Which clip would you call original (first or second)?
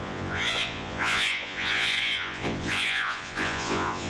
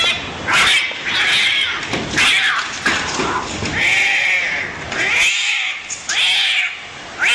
second